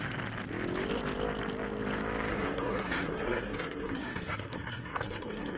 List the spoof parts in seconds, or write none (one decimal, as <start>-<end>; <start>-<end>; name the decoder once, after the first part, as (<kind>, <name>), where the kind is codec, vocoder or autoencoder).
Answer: 2.3-5.6 (codec, SNAC)